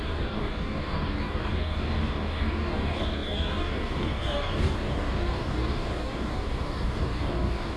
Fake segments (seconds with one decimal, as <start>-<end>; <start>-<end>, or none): 0.0-7.8